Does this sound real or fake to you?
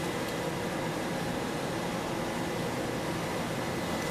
real